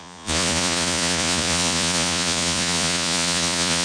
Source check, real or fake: fake